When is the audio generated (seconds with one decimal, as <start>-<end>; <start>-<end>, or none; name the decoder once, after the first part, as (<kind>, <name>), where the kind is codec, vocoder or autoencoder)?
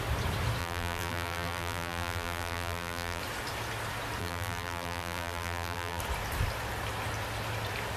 0.6-3.2 (vocoder, BigVGAN v2); 4.2-6.0